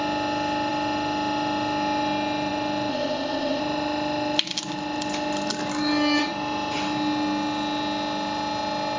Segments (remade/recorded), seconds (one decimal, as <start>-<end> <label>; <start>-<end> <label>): 0.0-2.9 recorded; 2.9-3.6 remade; 3.6-9.0 recorded